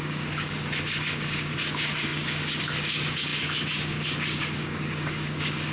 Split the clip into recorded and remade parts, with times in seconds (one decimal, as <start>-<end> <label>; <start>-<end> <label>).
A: 0.0-5.7 remade